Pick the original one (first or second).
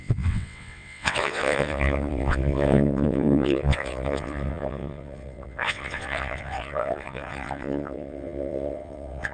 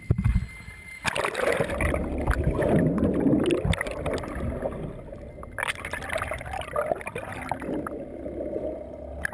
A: second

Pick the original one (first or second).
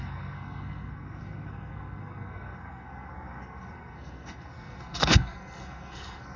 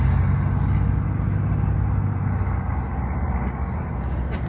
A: second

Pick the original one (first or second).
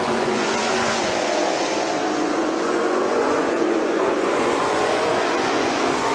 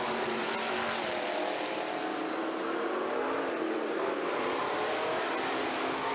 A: second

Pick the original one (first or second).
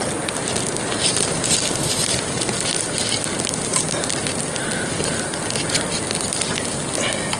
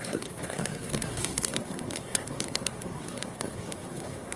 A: first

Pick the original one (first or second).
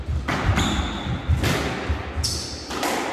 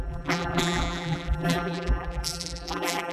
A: first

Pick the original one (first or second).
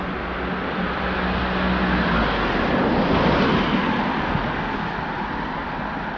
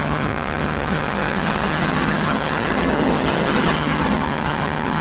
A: first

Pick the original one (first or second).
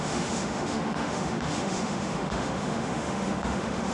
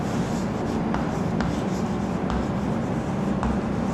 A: second